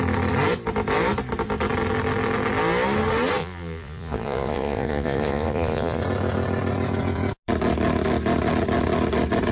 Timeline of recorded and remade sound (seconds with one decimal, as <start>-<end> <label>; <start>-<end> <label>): 0.0-3.4 recorded; 3.4-6.0 remade; 6.0-9.5 recorded